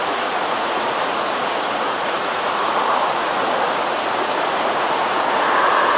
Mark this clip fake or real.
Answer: fake